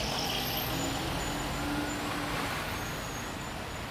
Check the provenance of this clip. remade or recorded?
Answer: recorded